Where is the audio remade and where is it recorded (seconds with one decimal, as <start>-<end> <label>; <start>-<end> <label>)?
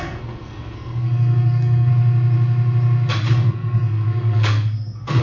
0.0-1.9 remade; 1.9-3.3 recorded; 3.3-5.2 remade